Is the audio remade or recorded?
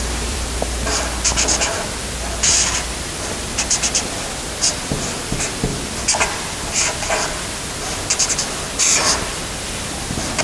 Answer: remade